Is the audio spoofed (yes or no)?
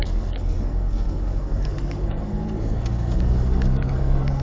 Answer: yes